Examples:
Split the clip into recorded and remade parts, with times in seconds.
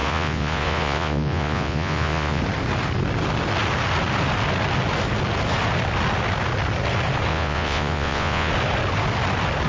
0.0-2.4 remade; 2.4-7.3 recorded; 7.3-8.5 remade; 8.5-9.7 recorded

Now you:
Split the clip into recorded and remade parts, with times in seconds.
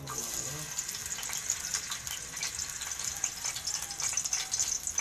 0.0-5.0 recorded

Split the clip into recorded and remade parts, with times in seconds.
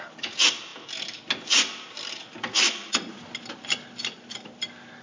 0.0-5.0 recorded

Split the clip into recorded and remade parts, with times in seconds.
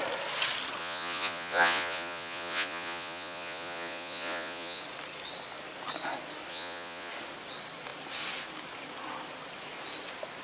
0.0-0.8 recorded; 0.8-4.8 remade; 4.8-6.5 recorded; 6.5-7.1 remade; 7.1-10.4 recorded